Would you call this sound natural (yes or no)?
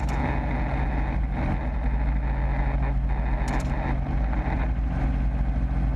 yes